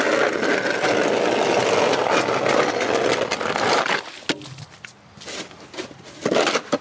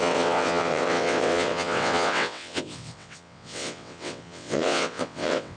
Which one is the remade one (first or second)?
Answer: second